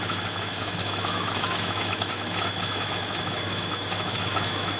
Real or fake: fake